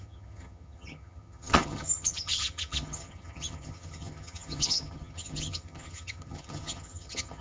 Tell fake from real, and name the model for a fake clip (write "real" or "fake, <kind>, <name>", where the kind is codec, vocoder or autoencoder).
fake, vocoder, HiFi-GAN